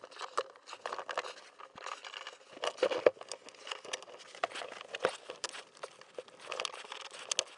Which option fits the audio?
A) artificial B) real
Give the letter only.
B